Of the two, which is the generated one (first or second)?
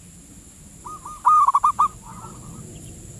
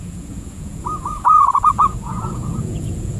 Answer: second